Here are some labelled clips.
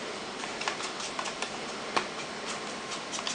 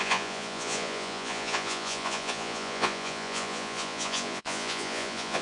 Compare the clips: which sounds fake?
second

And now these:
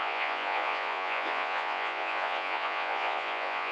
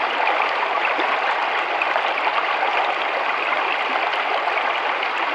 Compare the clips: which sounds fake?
first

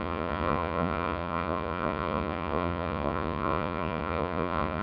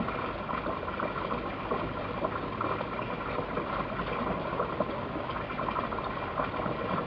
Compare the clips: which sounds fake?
first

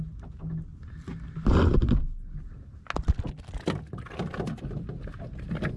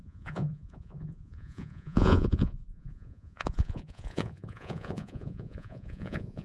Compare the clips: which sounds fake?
second